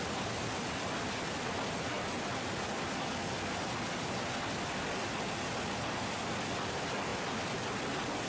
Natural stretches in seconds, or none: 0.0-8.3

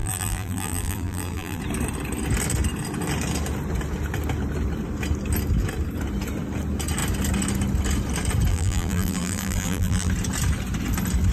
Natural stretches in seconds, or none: 1.6-8.5; 10.1-11.3

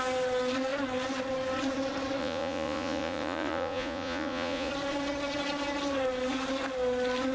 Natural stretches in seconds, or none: 0.0-2.2; 4.7-7.3